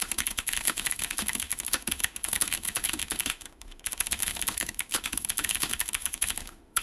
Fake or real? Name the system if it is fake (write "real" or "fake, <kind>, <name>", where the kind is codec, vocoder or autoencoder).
fake, autoencoder, DAC-VAE